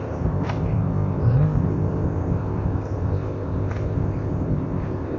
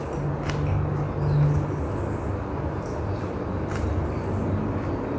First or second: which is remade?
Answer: first